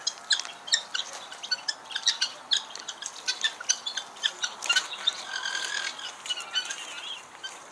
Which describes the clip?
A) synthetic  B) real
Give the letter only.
B